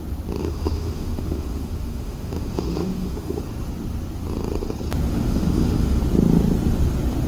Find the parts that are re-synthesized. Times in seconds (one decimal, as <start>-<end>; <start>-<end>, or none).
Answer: 0.4-3.4; 5.1-6.0